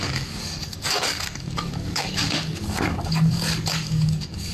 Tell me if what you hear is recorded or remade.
remade